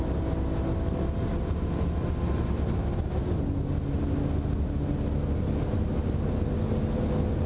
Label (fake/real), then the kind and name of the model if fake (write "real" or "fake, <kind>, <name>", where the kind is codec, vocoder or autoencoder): real